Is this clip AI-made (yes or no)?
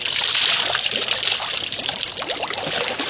no